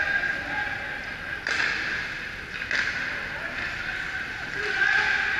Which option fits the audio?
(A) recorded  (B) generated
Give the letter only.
A